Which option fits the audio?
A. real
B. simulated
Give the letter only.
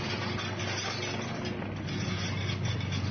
A